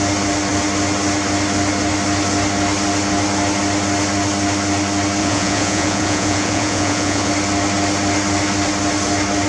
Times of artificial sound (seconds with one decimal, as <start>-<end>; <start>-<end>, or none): 5.2-7.3

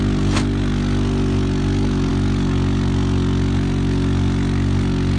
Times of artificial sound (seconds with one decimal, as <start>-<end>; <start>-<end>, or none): none

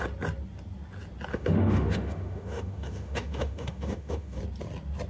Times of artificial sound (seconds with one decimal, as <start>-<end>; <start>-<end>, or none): 1.3-4.4

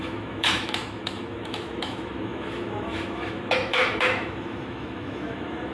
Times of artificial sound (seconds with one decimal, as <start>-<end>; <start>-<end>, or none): 0.0-5.7

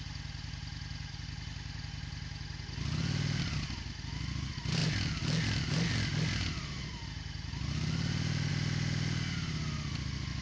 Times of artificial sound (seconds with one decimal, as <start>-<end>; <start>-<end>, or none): none